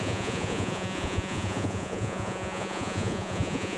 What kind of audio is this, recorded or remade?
remade